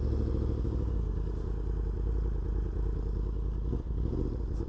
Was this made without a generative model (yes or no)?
yes